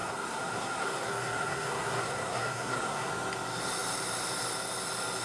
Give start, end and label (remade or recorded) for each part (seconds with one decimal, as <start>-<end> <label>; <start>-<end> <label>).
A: 0.0-3.1 remade; 3.1-5.2 recorded